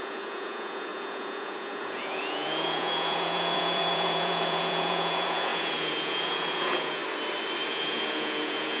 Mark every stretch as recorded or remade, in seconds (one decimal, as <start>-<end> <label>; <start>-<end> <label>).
0.0-7.0 remade; 7.0-7.7 recorded; 7.7-8.8 remade